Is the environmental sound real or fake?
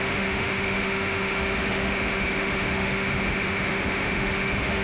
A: fake